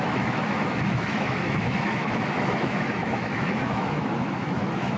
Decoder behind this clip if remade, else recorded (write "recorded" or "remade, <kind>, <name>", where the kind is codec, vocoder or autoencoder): remade, autoencoder, DAC-VAE